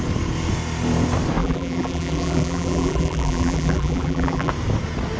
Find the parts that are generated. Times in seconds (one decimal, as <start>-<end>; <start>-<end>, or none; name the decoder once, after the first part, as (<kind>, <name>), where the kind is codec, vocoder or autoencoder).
1.4-4.5 (vocoder, BigVGAN v2)